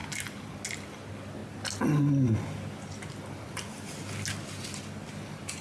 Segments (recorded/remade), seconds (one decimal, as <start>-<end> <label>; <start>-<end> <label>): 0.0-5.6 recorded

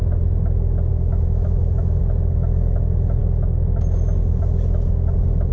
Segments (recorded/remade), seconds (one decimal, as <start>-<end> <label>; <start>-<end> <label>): 0.0-0.9 recorded; 0.9-2.0 remade; 2.0-5.5 recorded

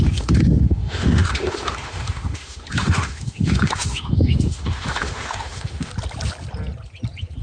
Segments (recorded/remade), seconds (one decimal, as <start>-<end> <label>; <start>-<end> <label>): 0.0-5.9 remade; 5.9-7.4 recorded

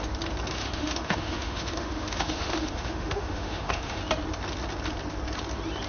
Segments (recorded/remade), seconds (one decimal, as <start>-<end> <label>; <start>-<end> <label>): 0.0-0.5 recorded; 0.5-4.0 remade; 4.0-5.9 recorded

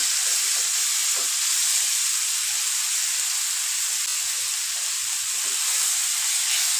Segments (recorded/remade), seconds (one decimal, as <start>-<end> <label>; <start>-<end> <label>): 0.0-6.8 recorded

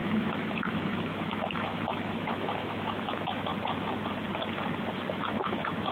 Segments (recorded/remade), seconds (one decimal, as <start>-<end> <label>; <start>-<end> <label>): 0.0-3.5 remade; 3.5-5.1 recorded; 5.1-5.9 remade

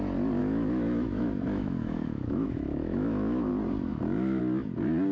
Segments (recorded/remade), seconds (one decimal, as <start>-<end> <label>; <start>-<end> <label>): 0.0-0.4 recorded; 0.4-3.5 remade; 3.5-3.9 recorded; 3.9-4.4 remade; 4.4-5.1 recorded